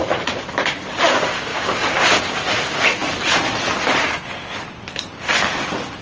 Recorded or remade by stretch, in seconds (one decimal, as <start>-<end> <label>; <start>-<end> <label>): 0.0-1.5 recorded; 1.5-2.2 remade; 2.2-6.0 recorded